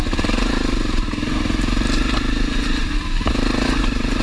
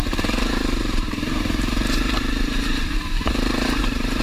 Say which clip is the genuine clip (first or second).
first